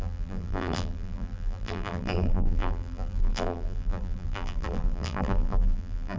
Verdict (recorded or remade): remade